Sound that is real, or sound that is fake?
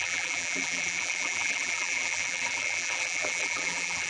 fake